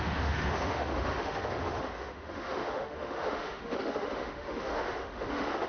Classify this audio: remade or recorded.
remade